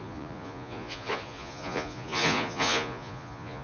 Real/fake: fake